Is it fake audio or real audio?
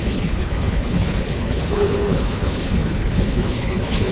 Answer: fake